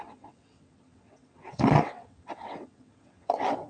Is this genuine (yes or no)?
no